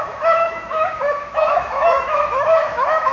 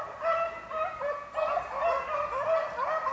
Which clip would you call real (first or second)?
second